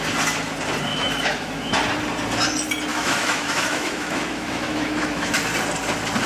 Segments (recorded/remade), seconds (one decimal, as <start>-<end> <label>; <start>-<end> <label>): 0.0-0.9 recorded; 0.9-1.7 remade; 1.7-2.9 recorded; 2.9-5.3 remade; 5.3-6.3 recorded